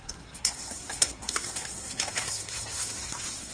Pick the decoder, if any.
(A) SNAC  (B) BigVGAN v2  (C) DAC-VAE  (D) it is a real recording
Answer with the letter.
A